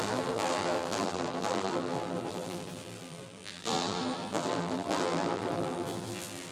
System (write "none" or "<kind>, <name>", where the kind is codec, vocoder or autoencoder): vocoder, BigVGAN v2